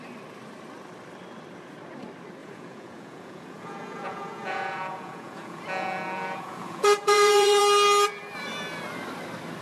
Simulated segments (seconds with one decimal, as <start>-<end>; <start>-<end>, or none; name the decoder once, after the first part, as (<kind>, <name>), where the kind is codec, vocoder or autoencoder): 2.4-7.6 (vocoder, Vocos)